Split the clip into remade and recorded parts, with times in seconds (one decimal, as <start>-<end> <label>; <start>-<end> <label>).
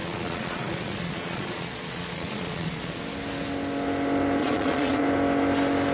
0.0-3.0 remade; 3.0-4.4 recorded; 4.4-5.0 remade; 5.0-5.9 recorded